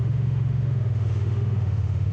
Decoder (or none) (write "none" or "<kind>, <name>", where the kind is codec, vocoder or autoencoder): autoencoder, DAC-VAE